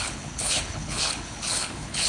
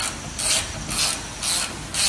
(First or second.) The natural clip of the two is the second